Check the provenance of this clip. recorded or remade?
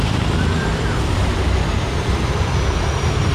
remade